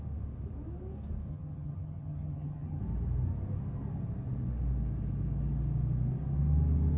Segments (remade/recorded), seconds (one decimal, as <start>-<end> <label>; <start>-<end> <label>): 0.0-1.3 recorded; 1.3-2.8 remade; 2.8-7.0 recorded